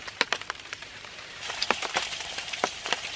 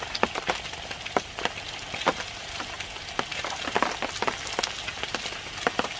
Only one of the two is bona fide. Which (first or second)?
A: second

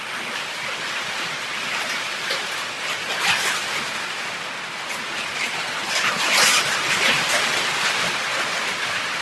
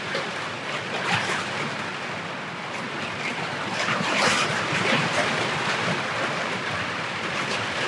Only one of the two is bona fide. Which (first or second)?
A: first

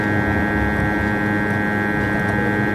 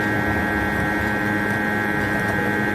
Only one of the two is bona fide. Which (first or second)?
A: first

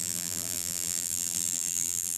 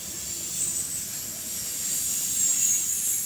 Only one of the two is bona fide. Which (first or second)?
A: second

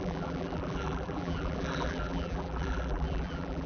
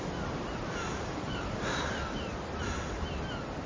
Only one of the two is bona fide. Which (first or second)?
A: second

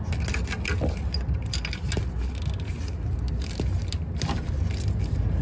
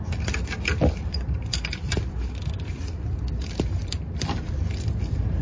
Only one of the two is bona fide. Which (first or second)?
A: first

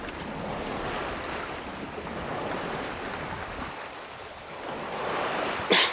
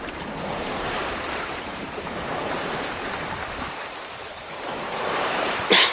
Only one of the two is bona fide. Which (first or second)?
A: first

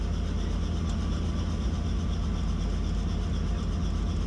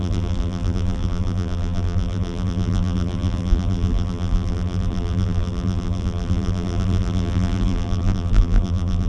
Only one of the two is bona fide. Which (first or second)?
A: first